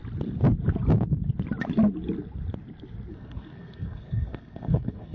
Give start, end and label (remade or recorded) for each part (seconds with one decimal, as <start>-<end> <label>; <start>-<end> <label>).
0.0-3.1 recorded; 3.1-5.1 remade